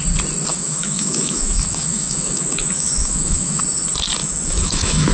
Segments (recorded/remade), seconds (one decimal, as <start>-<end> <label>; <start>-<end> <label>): 0.0-0.5 recorded; 0.5-3.6 remade; 3.6-4.2 recorded; 4.2-5.1 remade